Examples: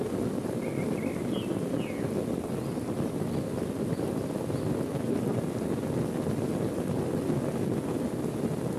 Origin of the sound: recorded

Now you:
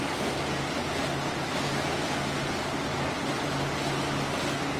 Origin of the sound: recorded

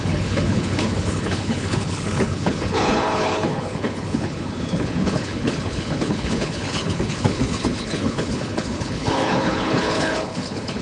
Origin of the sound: remade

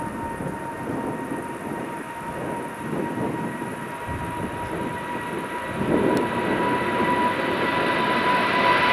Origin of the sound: recorded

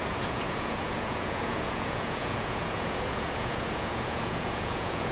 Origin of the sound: remade